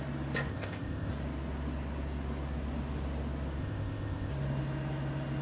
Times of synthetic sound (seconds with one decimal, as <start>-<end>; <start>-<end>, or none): 0.5-1.1; 3.6-4.3

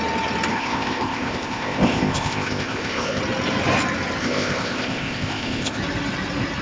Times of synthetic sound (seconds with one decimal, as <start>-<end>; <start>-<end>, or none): 0.5-3.2; 4.2-5.8